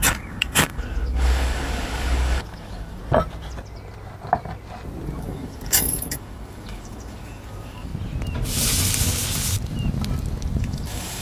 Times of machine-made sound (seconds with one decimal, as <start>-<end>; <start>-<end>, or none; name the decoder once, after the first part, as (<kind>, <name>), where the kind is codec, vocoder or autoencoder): 0.0-3.0 (codec, DAC); 5.2-7.9; 10.6-11.2